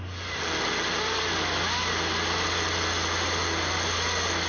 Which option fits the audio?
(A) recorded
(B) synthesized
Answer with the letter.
A